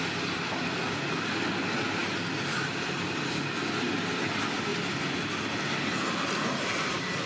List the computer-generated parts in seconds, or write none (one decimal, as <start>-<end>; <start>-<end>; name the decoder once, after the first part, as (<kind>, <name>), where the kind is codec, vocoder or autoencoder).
none